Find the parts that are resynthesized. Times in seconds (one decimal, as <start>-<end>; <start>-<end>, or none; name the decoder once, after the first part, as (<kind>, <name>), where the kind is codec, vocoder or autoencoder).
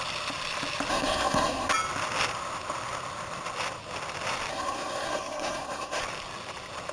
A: 0.9-1.7 (codec, SNAC); 4.5-6.0